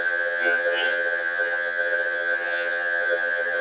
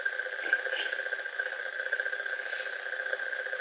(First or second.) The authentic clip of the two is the second